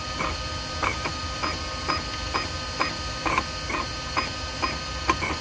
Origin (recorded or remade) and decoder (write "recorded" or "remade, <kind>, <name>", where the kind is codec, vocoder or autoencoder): recorded